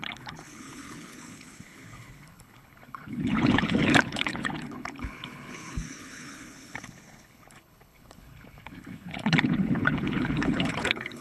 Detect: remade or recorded remade